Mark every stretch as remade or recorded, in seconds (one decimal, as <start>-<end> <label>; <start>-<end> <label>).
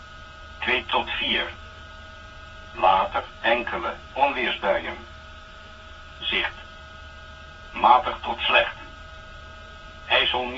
0.0-0.9 recorded; 0.9-1.8 remade; 1.8-2.9 recorded; 2.9-6.2 remade; 6.2-10.6 recorded